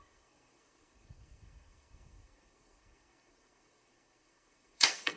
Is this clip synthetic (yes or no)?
yes